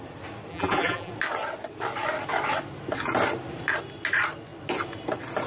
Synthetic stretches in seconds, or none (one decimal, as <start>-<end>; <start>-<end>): 0.5-1.1